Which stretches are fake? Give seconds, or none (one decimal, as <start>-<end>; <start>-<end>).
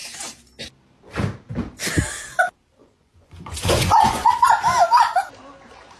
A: 2.8-4.3